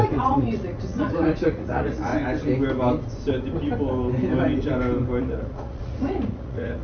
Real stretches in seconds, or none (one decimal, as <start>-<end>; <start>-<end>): 2.1-5.2